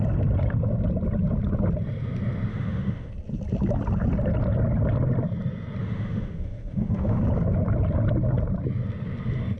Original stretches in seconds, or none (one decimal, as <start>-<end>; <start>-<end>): 0.0-2.5; 3.1-5.8; 7.2-9.6

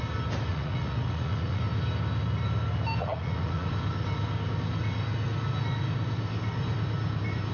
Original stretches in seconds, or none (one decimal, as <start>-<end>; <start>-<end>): 0.0-0.5; 1.6-3.0; 3.7-7.5

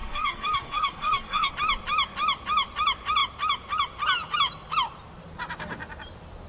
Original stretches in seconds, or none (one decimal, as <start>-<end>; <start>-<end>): 1.5-6.5

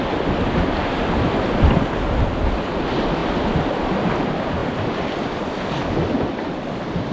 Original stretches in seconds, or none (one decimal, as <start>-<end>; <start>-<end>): 0.0-3.2; 3.8-7.1

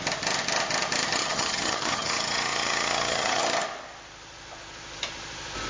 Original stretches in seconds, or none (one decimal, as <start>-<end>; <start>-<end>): 0.0-1.2; 3.4-5.7

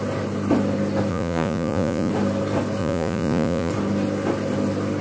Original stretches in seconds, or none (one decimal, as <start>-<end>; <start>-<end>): 0.0-1.1; 2.1-2.8; 3.7-5.0